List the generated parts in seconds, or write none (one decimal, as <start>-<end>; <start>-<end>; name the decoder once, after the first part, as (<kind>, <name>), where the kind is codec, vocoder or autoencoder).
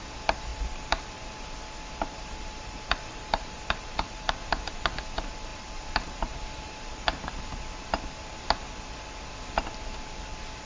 0.5-4.3 (vocoder, BigVGAN v2); 5.5-7.4